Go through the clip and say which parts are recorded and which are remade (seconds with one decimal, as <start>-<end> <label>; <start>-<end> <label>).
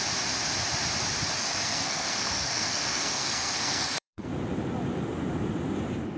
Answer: 0.0-1.4 recorded; 1.4-4.3 remade; 4.3-6.2 recorded